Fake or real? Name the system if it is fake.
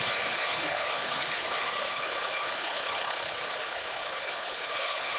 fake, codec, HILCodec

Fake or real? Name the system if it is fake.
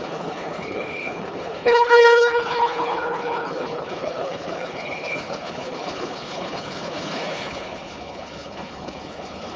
fake, codec, HILCodec